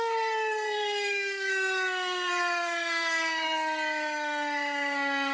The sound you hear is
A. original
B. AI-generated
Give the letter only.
B